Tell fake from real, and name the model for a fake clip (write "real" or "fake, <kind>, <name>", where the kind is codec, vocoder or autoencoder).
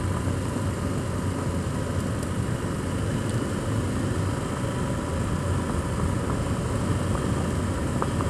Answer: real